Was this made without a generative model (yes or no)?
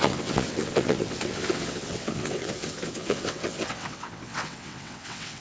no